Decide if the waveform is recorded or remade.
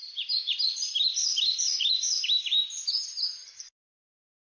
remade